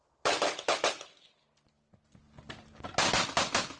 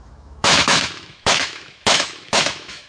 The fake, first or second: second